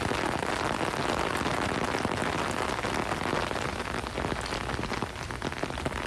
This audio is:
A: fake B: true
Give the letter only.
B